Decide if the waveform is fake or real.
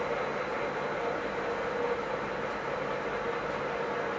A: real